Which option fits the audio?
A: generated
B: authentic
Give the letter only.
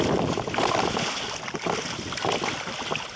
B